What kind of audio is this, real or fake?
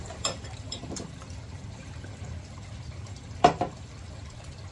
fake